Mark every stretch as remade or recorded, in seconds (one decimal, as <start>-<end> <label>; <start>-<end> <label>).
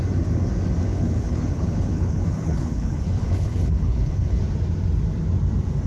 0.0-0.9 recorded; 0.9-4.4 remade; 4.4-5.9 recorded